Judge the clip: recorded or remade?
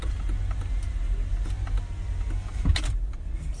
recorded